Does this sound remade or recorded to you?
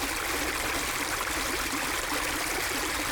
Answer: recorded